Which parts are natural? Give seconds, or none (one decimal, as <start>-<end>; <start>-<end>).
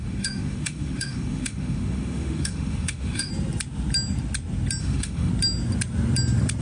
3.3-4.8; 5.3-6.6